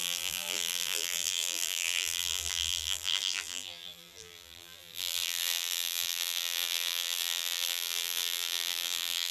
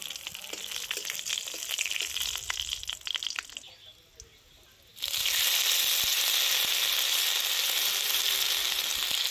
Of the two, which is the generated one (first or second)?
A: first